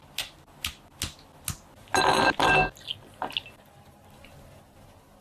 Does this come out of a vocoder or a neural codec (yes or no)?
no